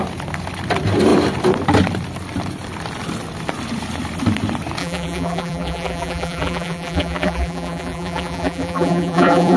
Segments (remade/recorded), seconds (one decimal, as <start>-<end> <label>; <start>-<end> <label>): 0.0-4.8 recorded; 4.8-9.6 remade